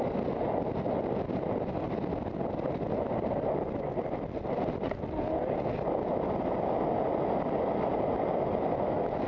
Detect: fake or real real